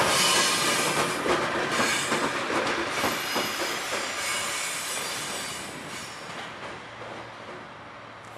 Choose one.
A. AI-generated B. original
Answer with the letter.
B